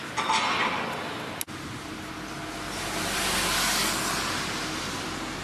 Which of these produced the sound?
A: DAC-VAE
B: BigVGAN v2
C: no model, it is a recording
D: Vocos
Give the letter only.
C